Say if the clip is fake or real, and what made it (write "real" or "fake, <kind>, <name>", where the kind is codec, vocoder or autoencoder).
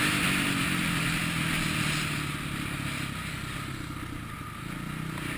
real